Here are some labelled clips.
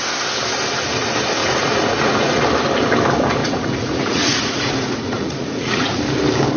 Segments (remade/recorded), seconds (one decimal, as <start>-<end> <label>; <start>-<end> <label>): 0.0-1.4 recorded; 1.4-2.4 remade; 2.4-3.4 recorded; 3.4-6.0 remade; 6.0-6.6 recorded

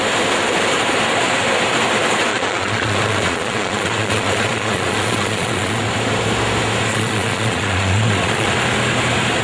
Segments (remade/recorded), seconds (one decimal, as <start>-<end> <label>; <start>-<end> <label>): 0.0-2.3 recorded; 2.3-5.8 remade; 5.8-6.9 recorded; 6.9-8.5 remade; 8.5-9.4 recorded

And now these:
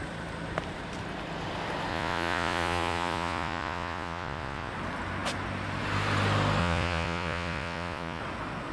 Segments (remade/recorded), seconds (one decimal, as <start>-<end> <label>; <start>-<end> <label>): 0.0-1.9 recorded; 1.9-4.7 remade; 4.7-6.6 recorded; 6.6-8.2 remade; 8.2-8.7 recorded

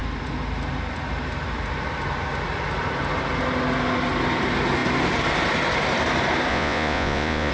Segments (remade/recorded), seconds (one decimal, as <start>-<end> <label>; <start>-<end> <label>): 0.0-6.5 recorded; 6.5-7.5 remade

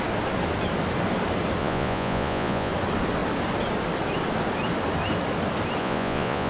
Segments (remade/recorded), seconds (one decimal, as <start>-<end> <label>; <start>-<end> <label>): 0.0-1.6 recorded; 1.6-2.7 remade; 2.7-5.8 recorded; 5.8-6.5 remade

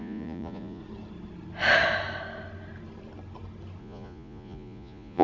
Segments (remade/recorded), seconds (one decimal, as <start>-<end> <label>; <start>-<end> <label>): 0.0-0.8 remade; 0.8-3.8 recorded; 3.8-5.2 remade

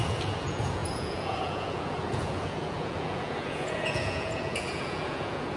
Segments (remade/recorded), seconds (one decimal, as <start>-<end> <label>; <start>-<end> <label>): 0.0-5.6 remade